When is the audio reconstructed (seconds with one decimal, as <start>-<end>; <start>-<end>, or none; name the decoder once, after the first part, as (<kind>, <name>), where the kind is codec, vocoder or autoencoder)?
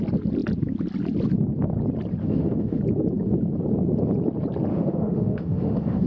2.2-2.8 (autoencoder, DAC-VAE); 4.7-6.1